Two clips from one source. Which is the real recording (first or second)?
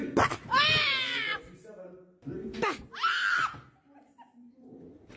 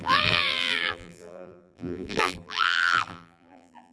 first